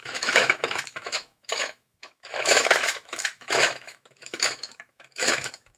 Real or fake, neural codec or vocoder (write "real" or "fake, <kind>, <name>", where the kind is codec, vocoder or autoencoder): fake, autoencoder, DAC-VAE